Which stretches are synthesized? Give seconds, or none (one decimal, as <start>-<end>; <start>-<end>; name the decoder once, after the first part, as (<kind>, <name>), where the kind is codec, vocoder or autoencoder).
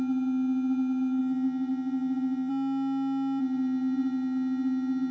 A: 0.0-2.5 (vocoder, HiFi-GAN); 3.4-5.1